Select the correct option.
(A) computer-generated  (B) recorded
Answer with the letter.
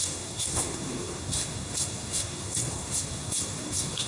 A